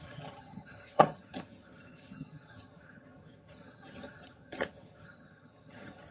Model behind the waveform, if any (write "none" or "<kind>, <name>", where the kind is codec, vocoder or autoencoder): vocoder, HiFi-GAN